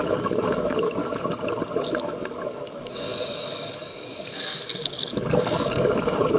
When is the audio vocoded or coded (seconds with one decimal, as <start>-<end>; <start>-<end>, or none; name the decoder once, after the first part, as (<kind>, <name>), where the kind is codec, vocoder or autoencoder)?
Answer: 0.0-1.0 (codec, DAC); 2.0-6.4